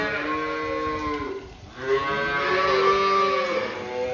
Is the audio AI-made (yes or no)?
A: no